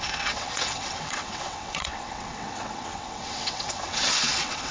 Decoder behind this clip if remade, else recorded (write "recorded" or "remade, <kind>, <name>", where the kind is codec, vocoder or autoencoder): remade, vocoder, WaveNeXt